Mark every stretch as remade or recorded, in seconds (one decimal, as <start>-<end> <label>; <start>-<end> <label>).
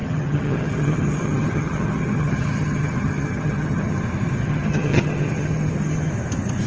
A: 0.0-4.0 remade; 4.0-4.4 recorded; 4.4-6.1 remade; 6.1-6.7 recorded